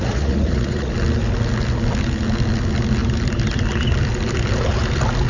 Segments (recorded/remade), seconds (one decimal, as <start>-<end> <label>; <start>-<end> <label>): 0.0-0.9 remade; 0.9-5.3 recorded

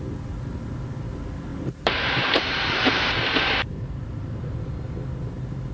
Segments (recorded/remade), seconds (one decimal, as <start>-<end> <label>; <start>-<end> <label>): 0.0-1.5 recorded; 1.5-4.9 remade; 4.9-5.7 recorded